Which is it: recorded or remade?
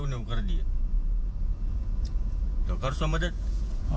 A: remade